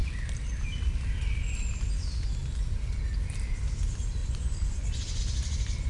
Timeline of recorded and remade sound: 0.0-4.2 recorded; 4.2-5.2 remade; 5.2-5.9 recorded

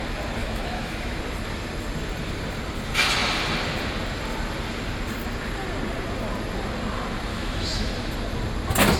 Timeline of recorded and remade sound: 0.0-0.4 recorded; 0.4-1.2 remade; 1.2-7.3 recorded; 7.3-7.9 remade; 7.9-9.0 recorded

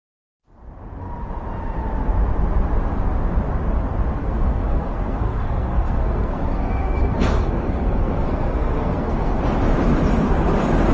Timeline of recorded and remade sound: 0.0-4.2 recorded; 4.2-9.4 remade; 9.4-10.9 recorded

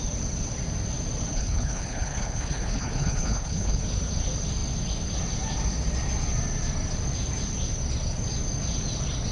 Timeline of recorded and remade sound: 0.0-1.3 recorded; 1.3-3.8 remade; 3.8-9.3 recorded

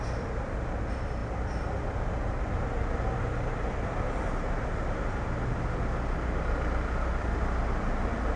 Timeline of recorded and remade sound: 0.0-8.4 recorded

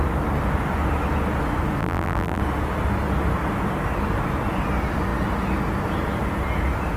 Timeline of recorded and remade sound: 0.0-1.8 recorded; 1.8-2.4 remade; 2.4-7.0 recorded

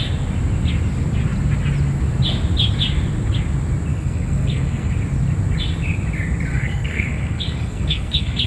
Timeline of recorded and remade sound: 0.0-3.9 recorded; 3.9-4.9 remade; 4.9-6.5 recorded; 6.5-8.5 remade